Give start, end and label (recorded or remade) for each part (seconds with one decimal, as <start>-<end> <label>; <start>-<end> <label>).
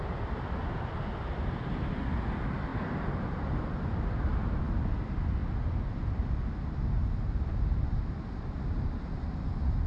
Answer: 0.0-9.9 recorded